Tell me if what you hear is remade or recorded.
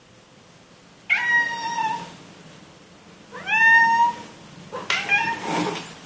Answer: recorded